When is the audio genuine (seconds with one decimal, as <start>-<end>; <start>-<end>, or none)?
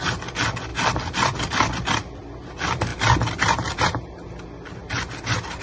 0.0-0.7; 1.7-2.9; 3.8-5.6